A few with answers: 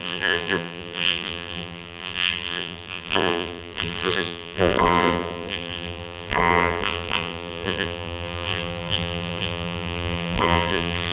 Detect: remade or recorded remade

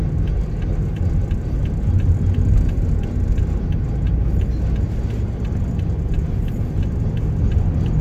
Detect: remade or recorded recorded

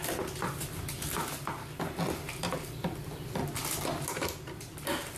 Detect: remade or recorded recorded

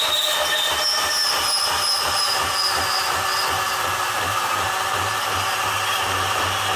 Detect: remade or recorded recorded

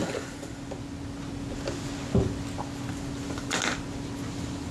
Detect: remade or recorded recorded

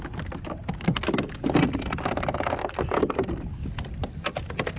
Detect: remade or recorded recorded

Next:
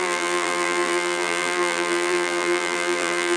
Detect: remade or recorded remade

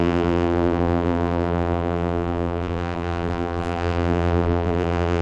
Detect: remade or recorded remade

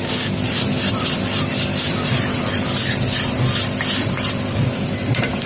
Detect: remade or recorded remade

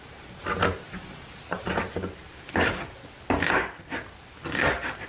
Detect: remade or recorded recorded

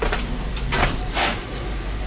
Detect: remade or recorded remade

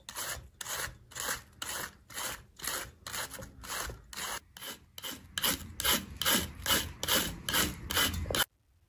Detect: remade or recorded recorded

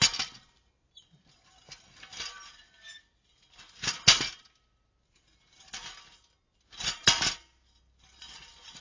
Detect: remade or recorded recorded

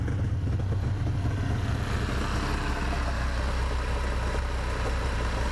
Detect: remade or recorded recorded